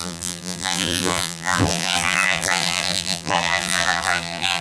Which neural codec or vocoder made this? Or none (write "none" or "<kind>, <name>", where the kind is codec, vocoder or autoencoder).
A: vocoder, BigVGAN v2